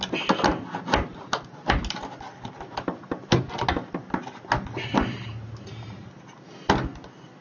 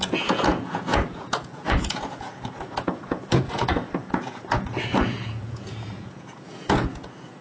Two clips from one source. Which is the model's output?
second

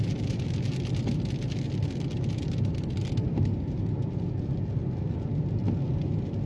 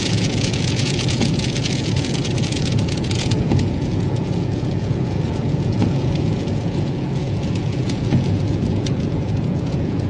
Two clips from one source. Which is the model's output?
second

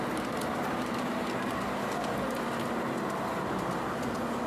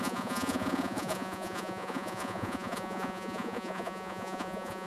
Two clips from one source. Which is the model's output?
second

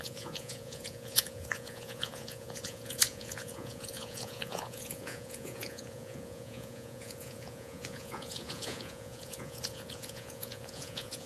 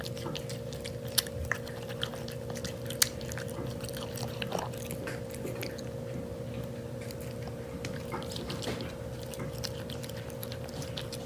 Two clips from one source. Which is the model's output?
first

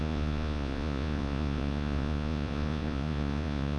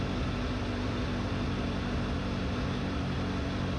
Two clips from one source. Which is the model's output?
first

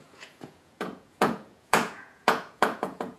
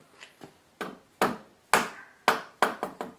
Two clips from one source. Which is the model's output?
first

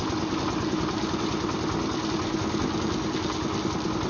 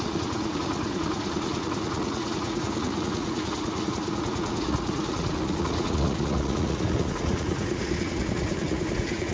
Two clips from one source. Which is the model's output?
second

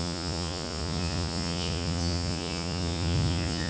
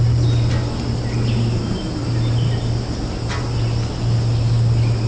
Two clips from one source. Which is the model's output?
first